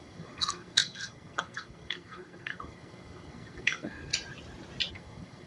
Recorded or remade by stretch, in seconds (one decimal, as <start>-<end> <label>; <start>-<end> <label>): 0.0-4.1 remade; 4.1-4.9 recorded; 4.9-5.5 remade